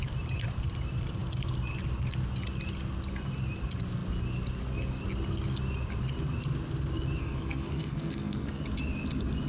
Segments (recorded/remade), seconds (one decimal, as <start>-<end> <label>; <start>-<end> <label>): 0.0-7.2 recorded; 7.2-8.6 remade; 8.6-9.5 recorded